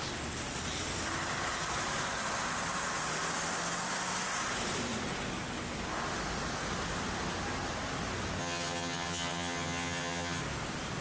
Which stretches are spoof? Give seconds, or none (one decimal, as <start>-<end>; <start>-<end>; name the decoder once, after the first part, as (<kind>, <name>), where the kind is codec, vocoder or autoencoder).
8.4-10.4 (vocoder, HiFi-GAN)